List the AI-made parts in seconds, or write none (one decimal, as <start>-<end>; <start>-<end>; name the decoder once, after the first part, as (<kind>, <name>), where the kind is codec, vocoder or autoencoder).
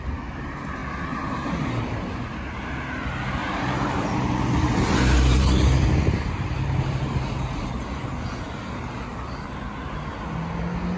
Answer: 3.4-7.6 (vocoder, BigVGAN v2)